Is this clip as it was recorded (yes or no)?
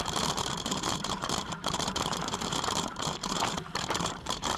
no